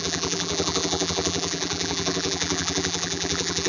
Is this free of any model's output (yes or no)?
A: no